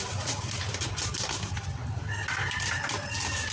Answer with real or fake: real